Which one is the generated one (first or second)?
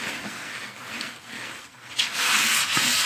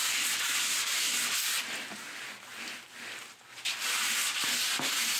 first